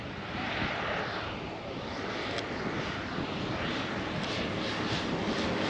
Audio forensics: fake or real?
real